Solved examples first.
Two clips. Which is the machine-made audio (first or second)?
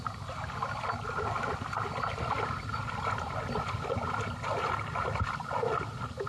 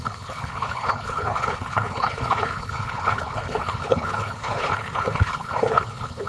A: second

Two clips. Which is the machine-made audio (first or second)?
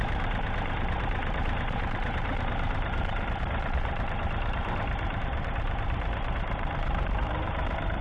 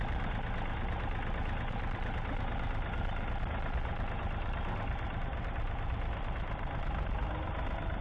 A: first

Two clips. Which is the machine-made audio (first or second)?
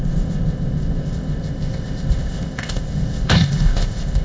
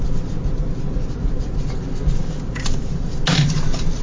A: first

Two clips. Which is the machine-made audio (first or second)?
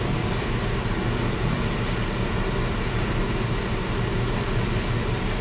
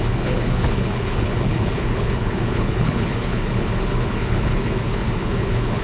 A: second